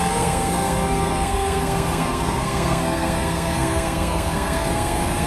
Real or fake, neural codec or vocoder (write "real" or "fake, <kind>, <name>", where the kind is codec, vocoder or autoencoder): fake, codec, SNAC